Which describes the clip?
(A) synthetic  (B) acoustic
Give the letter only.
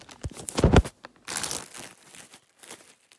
B